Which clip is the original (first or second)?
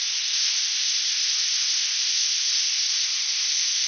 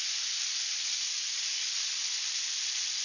second